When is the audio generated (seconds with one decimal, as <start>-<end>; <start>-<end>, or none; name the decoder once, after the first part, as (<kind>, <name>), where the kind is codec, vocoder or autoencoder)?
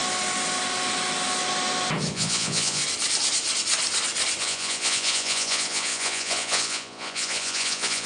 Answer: 2.1-2.8 (vocoder, Vocos); 4.4-8.1